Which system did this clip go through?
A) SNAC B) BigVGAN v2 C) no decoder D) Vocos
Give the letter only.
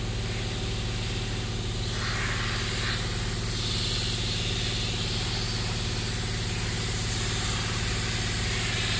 C